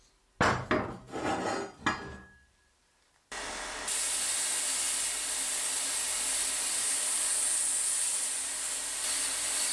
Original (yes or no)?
yes